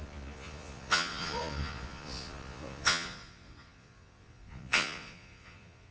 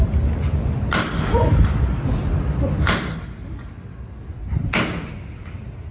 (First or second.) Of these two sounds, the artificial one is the first